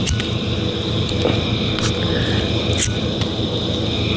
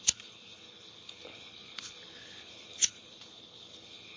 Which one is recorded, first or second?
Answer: first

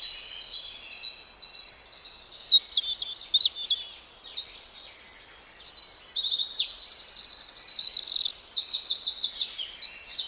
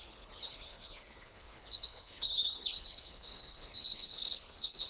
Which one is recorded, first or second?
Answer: first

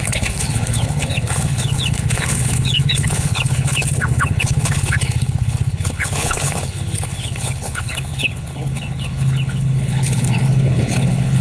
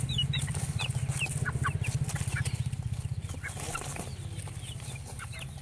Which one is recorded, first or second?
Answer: second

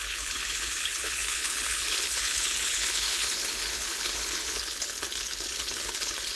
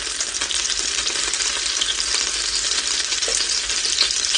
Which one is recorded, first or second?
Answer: second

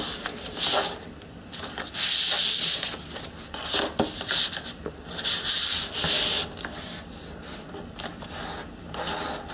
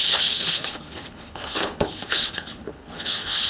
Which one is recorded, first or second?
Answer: first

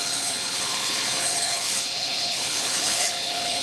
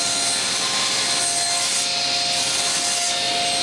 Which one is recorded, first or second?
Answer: second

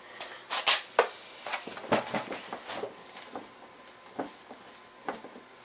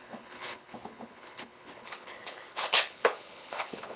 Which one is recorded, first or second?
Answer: first